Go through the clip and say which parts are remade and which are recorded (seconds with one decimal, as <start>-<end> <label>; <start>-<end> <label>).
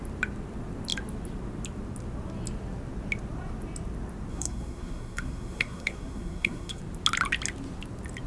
0.0-4.3 recorded; 4.3-6.8 remade; 6.8-8.3 recorded